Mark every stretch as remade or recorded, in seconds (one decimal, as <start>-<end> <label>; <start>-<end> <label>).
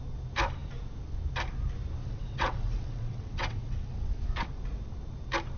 0.0-2.0 recorded; 2.0-4.1 remade; 4.1-5.6 recorded